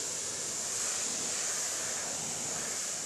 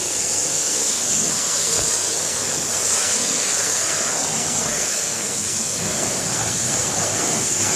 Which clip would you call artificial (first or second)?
second